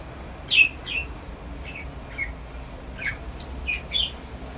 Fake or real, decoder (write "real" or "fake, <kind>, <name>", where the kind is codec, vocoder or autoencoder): real